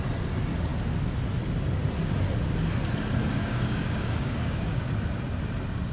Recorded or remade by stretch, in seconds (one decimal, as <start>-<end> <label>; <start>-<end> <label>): 0.0-3.2 recorded; 3.2-4.9 remade; 4.9-5.9 recorded